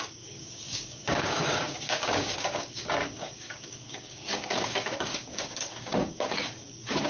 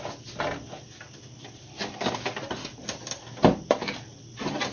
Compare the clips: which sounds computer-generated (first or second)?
first